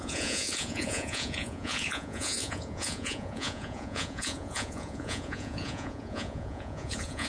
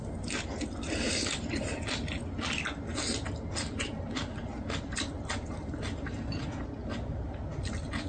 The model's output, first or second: first